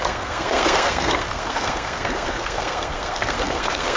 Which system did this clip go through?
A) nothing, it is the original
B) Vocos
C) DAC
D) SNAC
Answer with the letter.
D